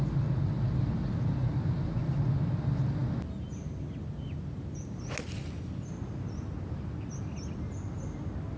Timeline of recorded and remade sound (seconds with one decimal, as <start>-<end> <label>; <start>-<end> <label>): 0.0-8.6 recorded